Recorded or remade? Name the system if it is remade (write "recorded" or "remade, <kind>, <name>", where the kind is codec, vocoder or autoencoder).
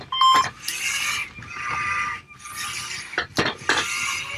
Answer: recorded